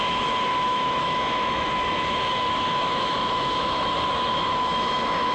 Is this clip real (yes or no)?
no